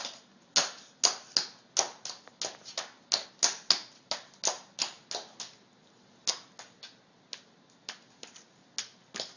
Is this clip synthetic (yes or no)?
no